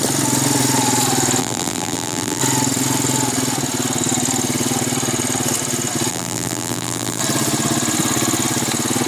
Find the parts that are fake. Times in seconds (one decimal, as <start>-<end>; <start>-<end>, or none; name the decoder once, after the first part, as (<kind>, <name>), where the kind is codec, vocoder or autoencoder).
1.4-2.4 (vocoder, BigVGAN v2); 6.1-7.2

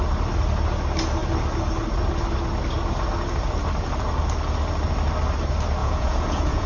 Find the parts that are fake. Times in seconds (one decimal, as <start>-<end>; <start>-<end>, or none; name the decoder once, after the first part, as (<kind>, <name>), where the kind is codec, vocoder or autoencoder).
5.8-6.7 (vocoder, Vocos)